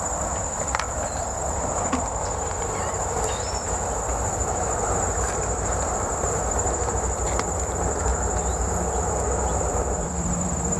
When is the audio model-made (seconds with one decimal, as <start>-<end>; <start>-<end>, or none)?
0.0-8.1; 9.5-10.8